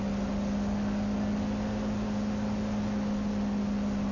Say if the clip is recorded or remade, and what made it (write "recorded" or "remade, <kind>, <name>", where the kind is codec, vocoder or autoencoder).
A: recorded